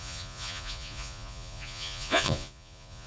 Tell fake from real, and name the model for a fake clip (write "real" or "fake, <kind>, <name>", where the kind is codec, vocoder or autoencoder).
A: fake, vocoder, Vocos